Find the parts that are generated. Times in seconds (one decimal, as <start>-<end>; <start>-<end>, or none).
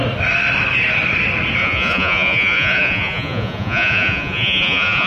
1.6-5.1